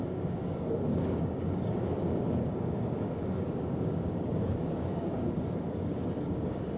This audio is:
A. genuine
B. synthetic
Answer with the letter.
B